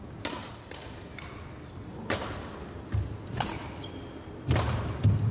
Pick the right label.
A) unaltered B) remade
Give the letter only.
A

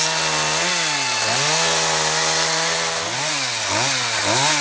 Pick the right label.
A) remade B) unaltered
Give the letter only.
B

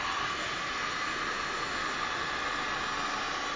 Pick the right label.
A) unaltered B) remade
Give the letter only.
A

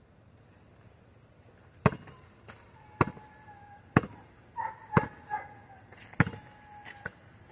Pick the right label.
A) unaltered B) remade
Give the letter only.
A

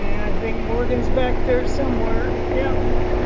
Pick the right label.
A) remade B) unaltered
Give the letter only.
B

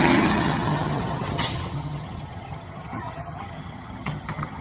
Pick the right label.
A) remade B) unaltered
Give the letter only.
A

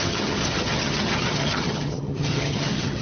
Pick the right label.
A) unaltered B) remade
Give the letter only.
B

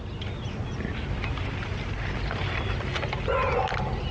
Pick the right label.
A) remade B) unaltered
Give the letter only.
B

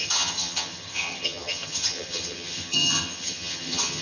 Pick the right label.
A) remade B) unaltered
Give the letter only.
A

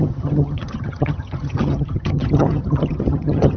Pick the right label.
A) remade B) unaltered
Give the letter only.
A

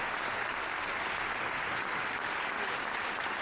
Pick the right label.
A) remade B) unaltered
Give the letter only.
B